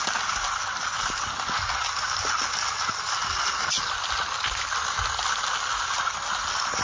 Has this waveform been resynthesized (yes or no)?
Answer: no